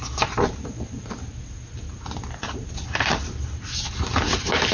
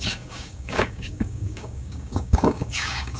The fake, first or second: second